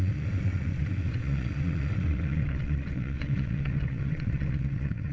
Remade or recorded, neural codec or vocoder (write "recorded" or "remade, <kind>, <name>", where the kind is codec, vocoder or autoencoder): remade, vocoder, WaveNeXt